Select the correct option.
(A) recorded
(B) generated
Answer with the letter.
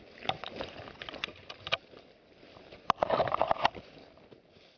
A